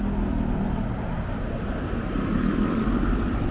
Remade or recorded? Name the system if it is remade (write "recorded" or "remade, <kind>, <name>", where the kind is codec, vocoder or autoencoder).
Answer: recorded